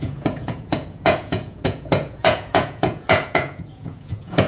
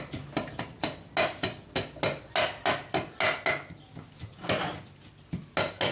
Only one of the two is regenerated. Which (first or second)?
first